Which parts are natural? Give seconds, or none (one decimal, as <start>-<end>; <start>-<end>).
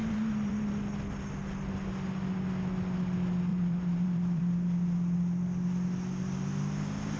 0.7-3.5; 4.4-7.2